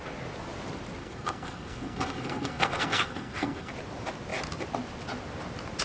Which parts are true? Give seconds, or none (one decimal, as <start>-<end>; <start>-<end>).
0.0-1.0; 3.7-5.8